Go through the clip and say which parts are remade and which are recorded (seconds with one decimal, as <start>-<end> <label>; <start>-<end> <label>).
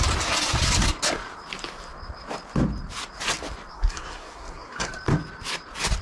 0.0-3.7 recorded; 3.7-4.9 remade; 4.9-6.0 recorded